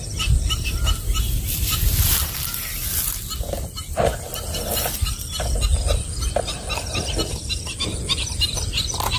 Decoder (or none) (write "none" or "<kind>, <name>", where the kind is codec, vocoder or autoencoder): none